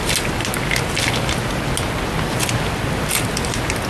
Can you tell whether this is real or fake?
real